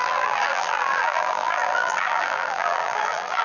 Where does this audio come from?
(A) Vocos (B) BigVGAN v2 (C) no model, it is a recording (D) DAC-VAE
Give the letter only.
B